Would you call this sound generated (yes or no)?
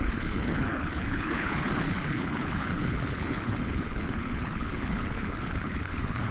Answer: yes